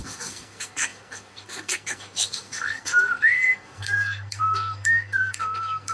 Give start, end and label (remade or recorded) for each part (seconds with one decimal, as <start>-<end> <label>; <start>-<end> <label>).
0.0-5.9 remade